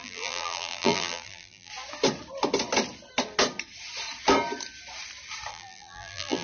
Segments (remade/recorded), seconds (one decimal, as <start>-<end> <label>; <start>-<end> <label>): 0.0-1.7 remade; 1.7-5.5 recorded; 5.5-6.4 remade